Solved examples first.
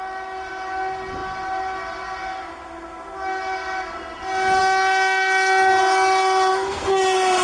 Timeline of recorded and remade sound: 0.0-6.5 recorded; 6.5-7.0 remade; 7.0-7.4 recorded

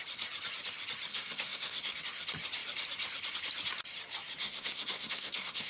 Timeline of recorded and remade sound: 0.0-1.1 recorded; 1.1-2.0 remade; 2.0-4.4 recorded; 4.4-5.7 remade

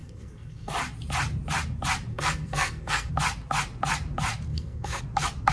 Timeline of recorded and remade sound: 0.0-0.7 remade; 0.7-2.1 recorded; 2.1-3.1 remade; 3.1-4.5 recorded; 4.5-5.0 remade; 5.0-5.5 recorded

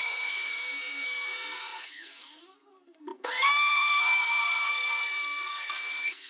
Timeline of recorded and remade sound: 0.0-6.3 remade

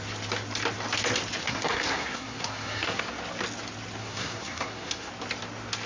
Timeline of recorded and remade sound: 0.0-1.4 recorded; 1.4-3.0 remade; 3.0-4.0 recorded; 4.0-5.1 remade; 5.1-5.9 recorded

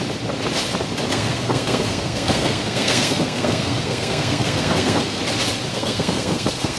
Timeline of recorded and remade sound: 0.0-1.1 recorded; 1.1-5.2 remade; 5.2-5.7 recorded; 5.7-6.8 remade

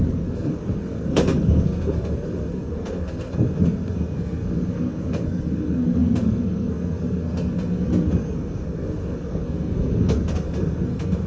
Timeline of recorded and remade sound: 0.0-11.3 remade